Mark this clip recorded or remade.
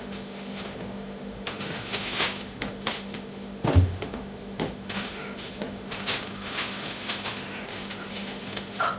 remade